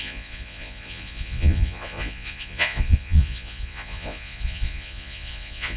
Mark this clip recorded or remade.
remade